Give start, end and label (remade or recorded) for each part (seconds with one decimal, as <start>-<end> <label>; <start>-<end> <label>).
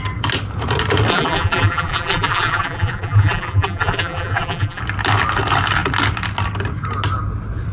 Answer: 0.0-1.1 recorded; 1.1-4.8 remade; 4.8-7.7 recorded